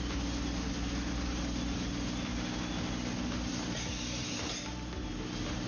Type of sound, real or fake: real